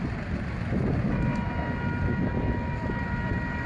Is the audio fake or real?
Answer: real